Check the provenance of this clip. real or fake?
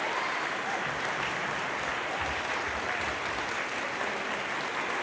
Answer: real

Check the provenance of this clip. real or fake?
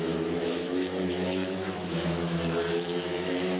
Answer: fake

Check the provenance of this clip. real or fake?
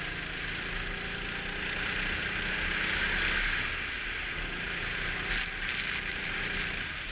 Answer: real